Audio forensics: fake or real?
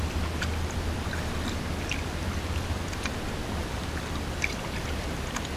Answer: real